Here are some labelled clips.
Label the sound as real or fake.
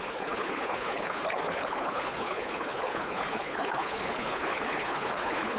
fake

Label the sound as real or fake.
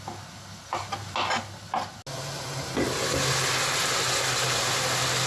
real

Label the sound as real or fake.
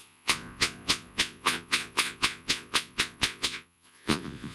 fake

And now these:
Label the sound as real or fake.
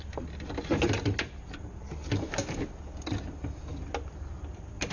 real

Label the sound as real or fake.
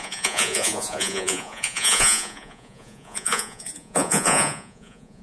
fake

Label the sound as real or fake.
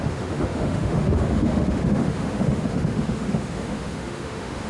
fake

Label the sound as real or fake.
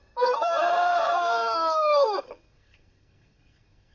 fake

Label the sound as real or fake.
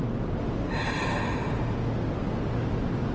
real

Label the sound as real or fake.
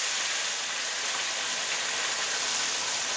real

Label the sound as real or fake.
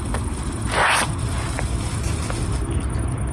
real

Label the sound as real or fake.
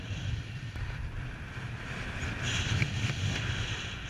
fake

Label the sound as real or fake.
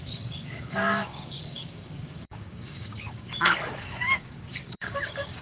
fake